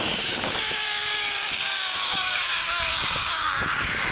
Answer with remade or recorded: remade